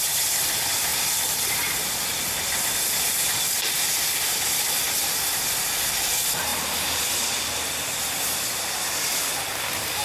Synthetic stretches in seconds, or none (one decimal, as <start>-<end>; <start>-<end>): 0.9-3.4; 6.5-8.1